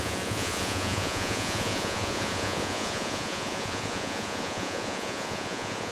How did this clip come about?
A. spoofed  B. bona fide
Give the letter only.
A